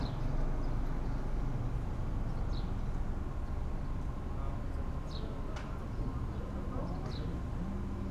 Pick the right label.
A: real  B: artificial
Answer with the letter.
A